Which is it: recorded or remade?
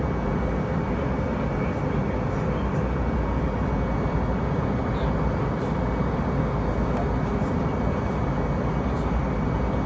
recorded